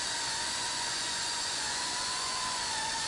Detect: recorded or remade remade